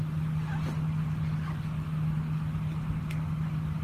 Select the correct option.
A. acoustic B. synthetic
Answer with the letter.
A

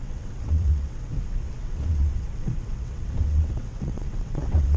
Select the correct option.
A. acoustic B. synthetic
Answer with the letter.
B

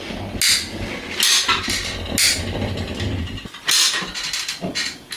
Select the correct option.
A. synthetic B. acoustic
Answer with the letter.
B